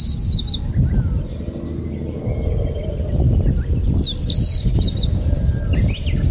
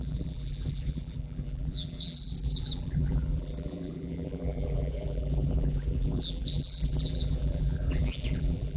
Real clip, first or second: first